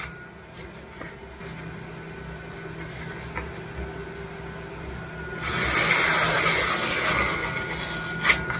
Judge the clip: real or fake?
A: real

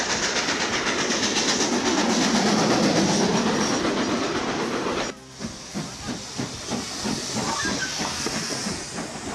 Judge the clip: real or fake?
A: real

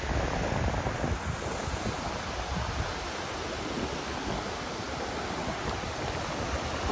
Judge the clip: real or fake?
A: real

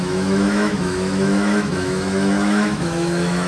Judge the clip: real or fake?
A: fake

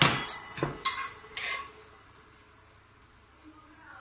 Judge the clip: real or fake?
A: real